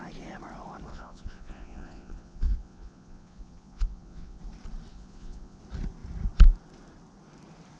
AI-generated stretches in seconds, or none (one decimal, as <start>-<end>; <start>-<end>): 0.9-4.4; 4.9-5.6